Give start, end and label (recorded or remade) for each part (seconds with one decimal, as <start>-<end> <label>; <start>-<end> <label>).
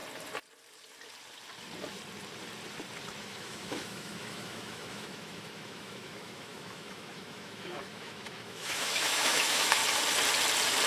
0.0-3.2 recorded; 3.2-9.8 remade; 9.8-10.9 recorded